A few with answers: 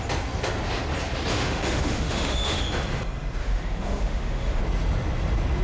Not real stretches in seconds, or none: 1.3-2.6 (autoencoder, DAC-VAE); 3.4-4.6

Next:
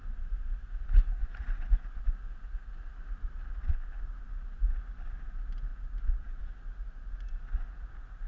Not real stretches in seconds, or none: none

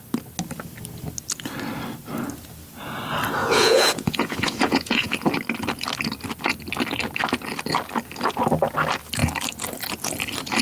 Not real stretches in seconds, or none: 3.4-5.3 (vocoder, Vocos)

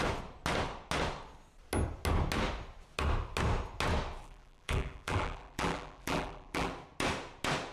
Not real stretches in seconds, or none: 4.2-6.7 (vocoder, BigVGAN v2)

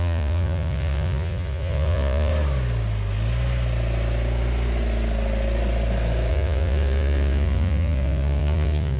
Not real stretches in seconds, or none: 0.0-2.3 (vocoder, Vocos); 6.3-9.0

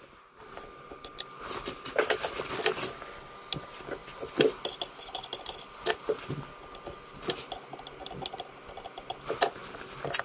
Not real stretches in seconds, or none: none

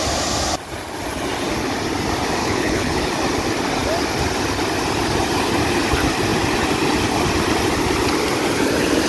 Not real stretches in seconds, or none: 2.4-3.0 (codec, HILCodec)

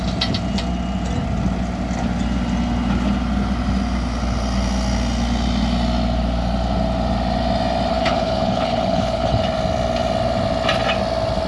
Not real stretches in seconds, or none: 7.9-9.4 (codec, HILCodec)